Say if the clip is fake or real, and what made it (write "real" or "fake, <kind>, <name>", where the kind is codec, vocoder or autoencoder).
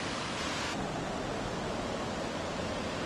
real